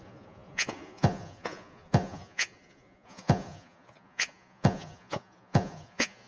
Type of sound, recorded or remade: remade